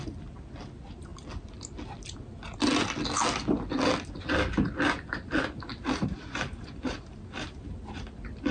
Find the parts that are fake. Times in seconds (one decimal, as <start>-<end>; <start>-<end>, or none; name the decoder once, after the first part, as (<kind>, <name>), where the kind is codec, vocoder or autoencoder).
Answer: 5.7-8.0 (vocoder, BigVGAN v2)